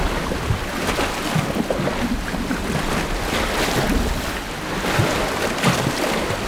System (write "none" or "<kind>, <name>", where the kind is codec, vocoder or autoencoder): none